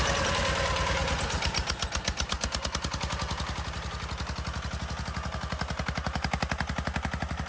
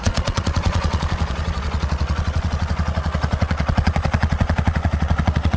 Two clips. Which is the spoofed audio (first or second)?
second